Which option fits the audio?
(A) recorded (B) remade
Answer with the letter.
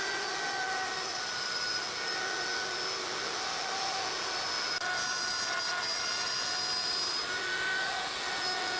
A